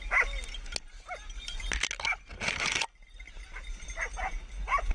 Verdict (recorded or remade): recorded